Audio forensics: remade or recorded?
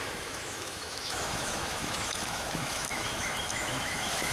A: remade